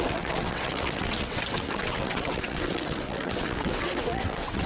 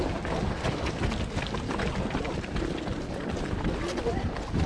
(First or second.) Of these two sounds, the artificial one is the first